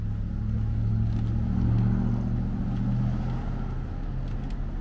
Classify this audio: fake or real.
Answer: real